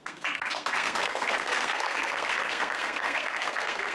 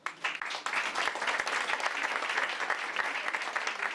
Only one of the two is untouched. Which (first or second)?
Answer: second